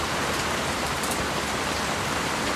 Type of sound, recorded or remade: remade